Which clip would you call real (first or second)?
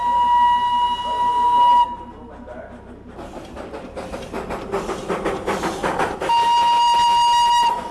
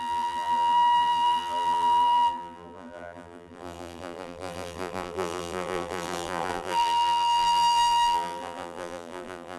first